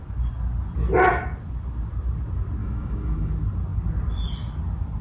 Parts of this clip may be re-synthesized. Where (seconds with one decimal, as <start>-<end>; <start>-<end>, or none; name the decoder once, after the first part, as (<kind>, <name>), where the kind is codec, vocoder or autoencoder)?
2.6-3.3 (autoencoder, DAC-VAE)